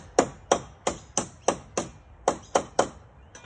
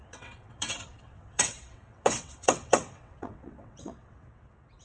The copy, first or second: second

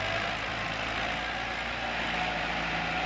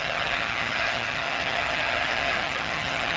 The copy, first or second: second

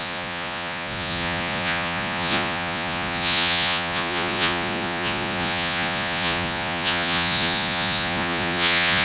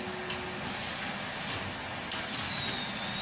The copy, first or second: first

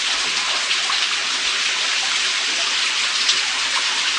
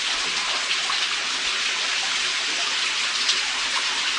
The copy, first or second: first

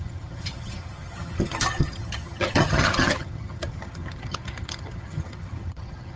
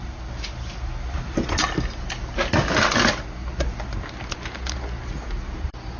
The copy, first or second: first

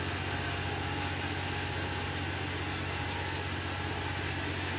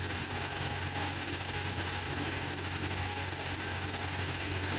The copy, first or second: second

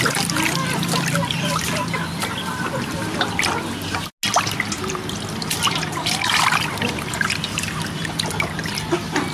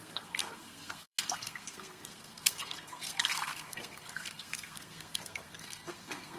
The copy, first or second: second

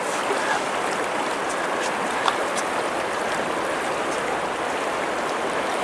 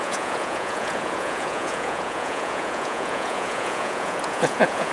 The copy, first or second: second